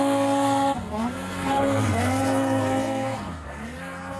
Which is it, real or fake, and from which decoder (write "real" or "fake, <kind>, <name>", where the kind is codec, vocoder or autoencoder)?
fake, codec, SNAC